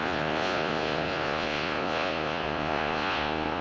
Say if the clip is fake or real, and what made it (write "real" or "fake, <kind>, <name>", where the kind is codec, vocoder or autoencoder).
fake, vocoder, Vocos